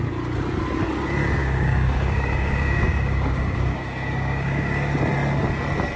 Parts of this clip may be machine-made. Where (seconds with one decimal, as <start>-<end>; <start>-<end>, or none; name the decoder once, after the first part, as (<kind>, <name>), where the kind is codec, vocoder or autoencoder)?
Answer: 1.4-5.0 (codec, DAC)